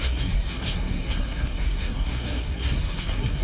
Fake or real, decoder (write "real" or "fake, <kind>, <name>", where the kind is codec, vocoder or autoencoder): fake, codec, SNAC